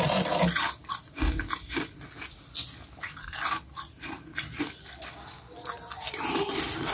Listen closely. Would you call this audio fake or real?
real